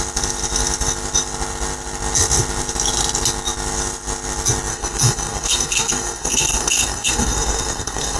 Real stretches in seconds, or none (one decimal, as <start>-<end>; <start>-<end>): 0.0-4.7